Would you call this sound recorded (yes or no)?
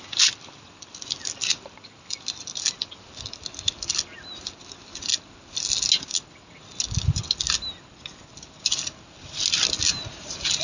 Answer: yes